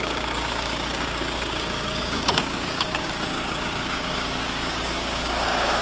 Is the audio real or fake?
fake